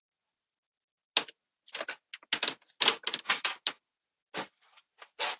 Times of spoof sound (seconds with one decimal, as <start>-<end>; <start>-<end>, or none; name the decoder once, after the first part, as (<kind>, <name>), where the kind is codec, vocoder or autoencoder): none